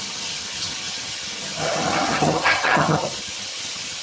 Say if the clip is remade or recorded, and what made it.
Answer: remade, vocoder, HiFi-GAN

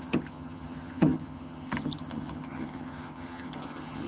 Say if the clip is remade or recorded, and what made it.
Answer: remade, vocoder, HiFi-GAN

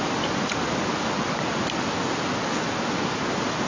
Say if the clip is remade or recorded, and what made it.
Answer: recorded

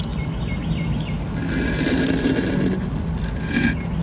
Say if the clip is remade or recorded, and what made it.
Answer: recorded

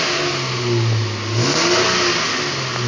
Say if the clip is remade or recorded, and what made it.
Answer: recorded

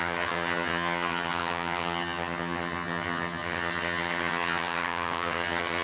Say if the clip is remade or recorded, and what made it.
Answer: remade, vocoder, HiFi-GAN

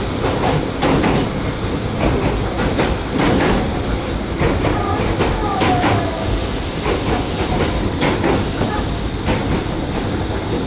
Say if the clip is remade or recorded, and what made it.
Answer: recorded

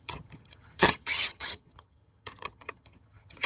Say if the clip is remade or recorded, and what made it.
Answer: remade, vocoder, HiFi-GAN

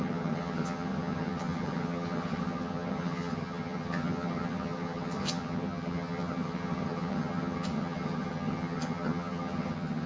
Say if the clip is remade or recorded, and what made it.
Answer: remade, vocoder, HiFi-GAN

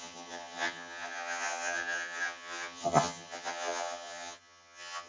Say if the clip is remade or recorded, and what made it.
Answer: remade, vocoder, HiFi-GAN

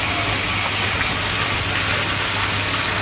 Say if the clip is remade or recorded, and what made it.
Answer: recorded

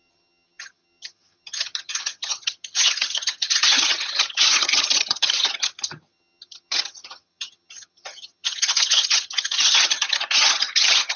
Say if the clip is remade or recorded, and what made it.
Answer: remade, vocoder, HiFi-GAN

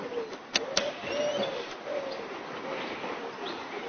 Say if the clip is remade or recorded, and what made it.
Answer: recorded